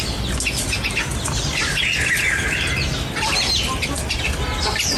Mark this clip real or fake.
real